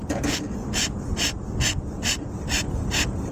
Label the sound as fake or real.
real